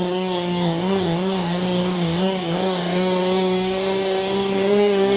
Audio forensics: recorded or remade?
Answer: remade